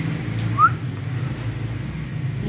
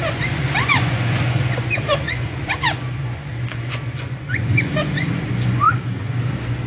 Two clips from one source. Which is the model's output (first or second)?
second